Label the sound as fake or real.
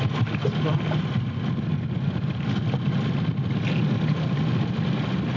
real